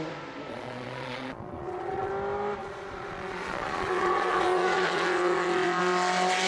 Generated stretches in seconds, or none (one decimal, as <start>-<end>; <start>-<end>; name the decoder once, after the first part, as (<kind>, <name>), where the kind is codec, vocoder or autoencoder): 0.5-2.1 (vocoder, Vocos); 2.6-5.8